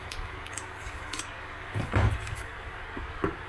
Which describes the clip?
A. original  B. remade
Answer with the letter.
B